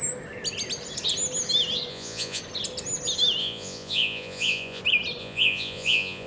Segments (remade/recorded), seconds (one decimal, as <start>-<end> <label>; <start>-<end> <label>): 0.0-1.9 recorded; 1.9-2.4 remade; 2.4-3.4 recorded; 3.4-4.8 remade; 4.8-5.2 recorded; 5.2-6.3 remade